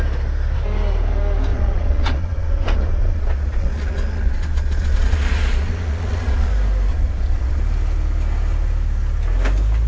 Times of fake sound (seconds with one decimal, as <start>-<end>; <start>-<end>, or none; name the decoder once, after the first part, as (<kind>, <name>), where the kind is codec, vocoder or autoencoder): 1.5-6.5 (vocoder, Vocos); 6.9-7.6